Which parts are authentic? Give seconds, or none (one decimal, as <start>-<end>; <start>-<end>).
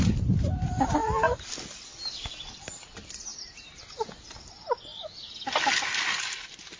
4.9-6.8